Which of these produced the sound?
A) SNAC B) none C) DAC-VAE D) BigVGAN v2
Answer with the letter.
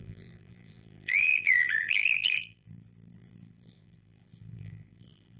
D